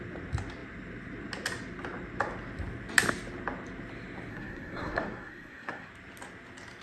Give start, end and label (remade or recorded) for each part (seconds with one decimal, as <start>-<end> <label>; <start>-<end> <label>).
0.0-4.3 recorded; 4.3-5.9 remade; 5.9-6.8 recorded